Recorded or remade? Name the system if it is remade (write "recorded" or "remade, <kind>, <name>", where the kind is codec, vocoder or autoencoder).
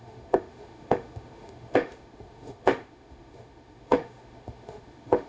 remade, autoencoder, DAC-VAE